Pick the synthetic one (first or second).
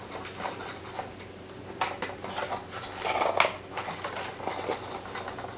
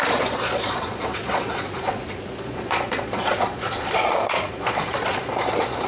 second